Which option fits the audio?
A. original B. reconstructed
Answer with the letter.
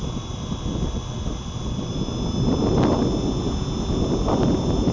A